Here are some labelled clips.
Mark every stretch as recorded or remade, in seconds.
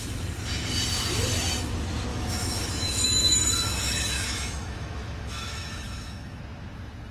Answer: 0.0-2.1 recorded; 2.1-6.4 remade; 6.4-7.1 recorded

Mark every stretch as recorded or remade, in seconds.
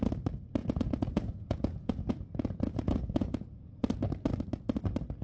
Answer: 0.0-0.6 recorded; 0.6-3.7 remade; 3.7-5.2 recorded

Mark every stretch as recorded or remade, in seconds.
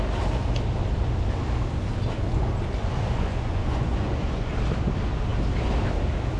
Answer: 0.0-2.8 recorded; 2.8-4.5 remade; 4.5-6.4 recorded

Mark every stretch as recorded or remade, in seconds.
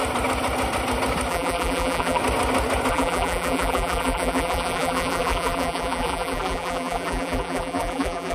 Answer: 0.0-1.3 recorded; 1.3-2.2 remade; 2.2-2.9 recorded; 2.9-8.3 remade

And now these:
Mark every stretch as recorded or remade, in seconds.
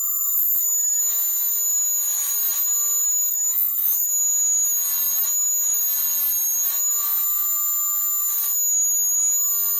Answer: 0.0-1.0 remade; 1.0-3.3 recorded; 3.3-4.1 remade; 4.1-9.8 recorded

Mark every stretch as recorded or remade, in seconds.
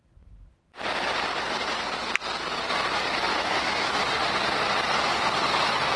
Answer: 0.0-3.3 recorded; 3.3-4.0 remade; 4.0-6.0 recorded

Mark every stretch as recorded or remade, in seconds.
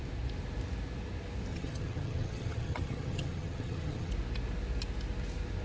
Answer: 0.0-1.5 recorded; 1.5-4.1 remade; 4.1-5.6 recorded